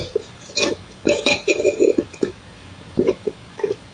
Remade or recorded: remade